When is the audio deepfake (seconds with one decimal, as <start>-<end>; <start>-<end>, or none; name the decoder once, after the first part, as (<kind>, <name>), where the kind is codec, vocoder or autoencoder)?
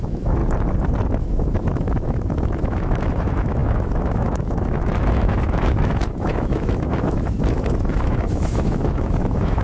0.0-0.4 (autoencoder, DAC-VAE); 1.1-9.6